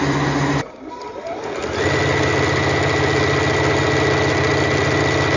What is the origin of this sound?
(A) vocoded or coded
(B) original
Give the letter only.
B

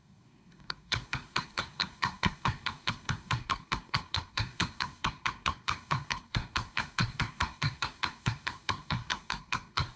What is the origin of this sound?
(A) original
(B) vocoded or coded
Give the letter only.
B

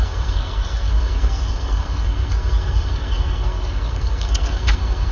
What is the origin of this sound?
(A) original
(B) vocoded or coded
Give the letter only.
B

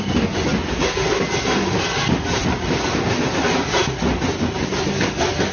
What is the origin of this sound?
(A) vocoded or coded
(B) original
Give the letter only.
B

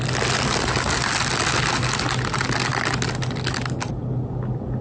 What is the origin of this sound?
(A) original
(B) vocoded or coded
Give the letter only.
A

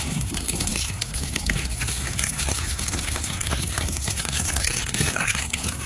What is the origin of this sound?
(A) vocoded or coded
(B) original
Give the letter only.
A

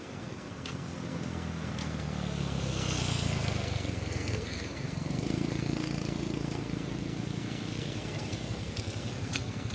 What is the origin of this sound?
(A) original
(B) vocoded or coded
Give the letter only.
B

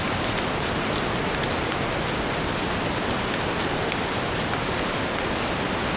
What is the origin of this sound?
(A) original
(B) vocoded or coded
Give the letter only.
A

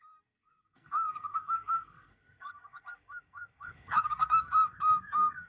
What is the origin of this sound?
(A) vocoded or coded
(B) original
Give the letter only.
A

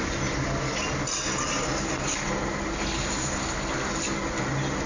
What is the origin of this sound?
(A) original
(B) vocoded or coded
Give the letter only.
A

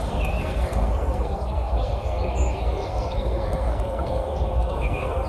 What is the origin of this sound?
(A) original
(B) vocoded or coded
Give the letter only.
B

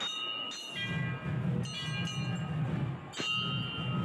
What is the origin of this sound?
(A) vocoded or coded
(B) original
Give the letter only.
B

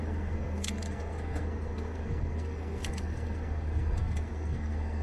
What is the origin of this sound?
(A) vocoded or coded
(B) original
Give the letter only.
A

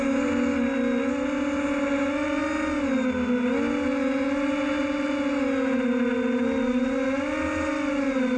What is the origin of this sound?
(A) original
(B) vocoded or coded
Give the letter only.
A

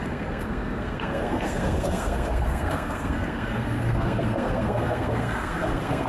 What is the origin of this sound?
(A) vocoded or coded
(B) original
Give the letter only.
A